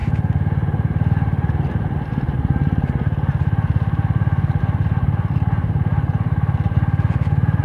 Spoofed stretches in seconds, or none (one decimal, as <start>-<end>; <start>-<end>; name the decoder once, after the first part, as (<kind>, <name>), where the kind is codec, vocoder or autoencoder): 5.9-7.6 (vocoder, BigVGAN v2)

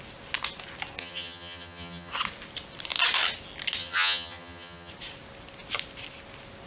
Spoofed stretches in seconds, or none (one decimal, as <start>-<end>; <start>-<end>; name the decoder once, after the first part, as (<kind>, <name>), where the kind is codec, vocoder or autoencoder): 1.0-2.1 (vocoder, HiFi-GAN); 3.8-4.9

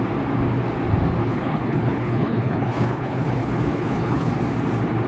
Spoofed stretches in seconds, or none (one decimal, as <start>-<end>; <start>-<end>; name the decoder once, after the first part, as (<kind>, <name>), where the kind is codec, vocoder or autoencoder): 1.2-4.3 (codec, HILCodec)

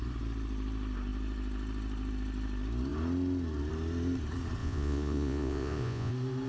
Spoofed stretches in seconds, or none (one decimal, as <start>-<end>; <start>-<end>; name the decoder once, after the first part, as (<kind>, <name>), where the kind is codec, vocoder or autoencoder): 4.6-6.1 (vocoder, Vocos)

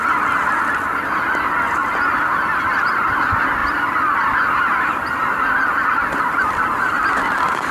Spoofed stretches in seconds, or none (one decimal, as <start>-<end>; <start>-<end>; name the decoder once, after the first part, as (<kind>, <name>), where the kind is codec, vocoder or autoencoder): 1.8-3.1 (vocoder, BigVGAN v2); 3.6-7.7

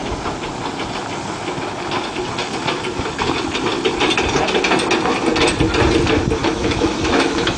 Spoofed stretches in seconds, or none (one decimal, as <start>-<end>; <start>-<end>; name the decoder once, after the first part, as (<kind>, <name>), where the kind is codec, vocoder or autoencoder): 6.4-7.6 (autoencoder, DAC-VAE)

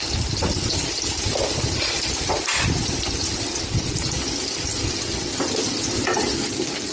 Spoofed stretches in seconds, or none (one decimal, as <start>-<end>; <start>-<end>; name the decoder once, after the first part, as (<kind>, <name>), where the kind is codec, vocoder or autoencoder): none